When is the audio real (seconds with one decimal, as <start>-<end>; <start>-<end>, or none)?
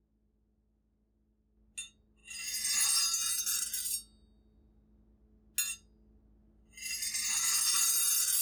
0.0-8.4